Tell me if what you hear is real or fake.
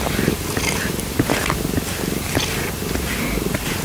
real